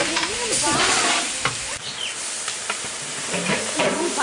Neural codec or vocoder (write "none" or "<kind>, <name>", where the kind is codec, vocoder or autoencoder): vocoder, BigVGAN v2